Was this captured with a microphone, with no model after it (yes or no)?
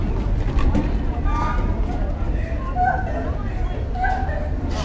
yes